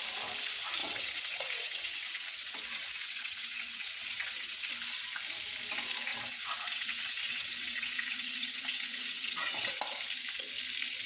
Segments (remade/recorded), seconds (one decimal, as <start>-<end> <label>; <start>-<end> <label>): 0.0-0.8 recorded; 0.8-4.7 remade; 4.7-6.1 recorded; 6.1-9.7 remade; 9.7-11.1 recorded